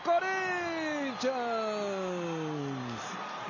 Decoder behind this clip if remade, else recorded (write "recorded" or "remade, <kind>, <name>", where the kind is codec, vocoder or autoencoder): recorded